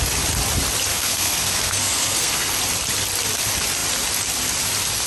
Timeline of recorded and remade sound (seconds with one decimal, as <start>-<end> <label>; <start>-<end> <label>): 0.0-0.9 recorded; 0.9-2.6 remade; 2.6-5.1 recorded